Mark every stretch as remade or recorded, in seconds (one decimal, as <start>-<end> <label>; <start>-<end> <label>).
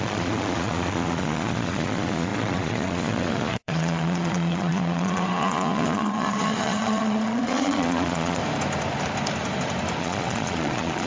0.0-8.4 remade; 8.4-10.0 recorded; 10.0-11.1 remade